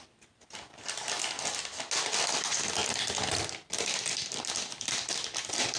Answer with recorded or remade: recorded